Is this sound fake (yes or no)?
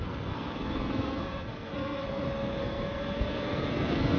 yes